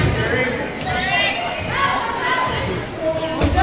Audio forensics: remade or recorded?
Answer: recorded